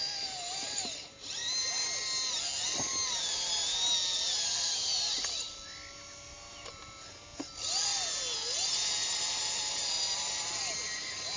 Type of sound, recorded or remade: recorded